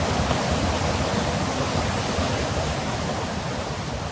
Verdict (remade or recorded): recorded